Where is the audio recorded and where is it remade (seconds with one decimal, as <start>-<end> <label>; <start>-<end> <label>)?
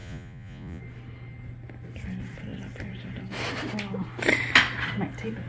0.0-0.8 remade; 0.8-5.5 recorded